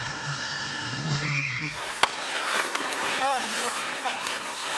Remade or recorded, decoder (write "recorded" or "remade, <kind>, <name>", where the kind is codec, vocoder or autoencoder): remade, codec, SNAC